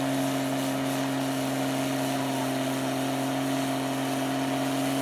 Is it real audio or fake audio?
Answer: real